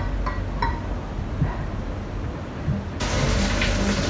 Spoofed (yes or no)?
no